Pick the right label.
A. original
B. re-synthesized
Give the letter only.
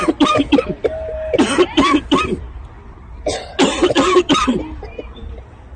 A